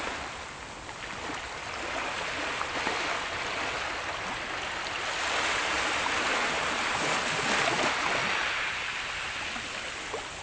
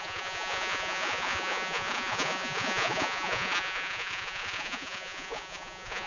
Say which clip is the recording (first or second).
first